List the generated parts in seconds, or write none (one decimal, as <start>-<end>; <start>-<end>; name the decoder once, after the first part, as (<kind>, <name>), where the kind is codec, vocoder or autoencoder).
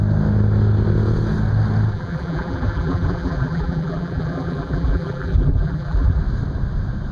1.9-6.2 (vocoder, BigVGAN v2)